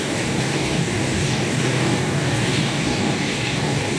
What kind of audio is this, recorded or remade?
remade